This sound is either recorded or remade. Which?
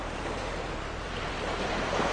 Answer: recorded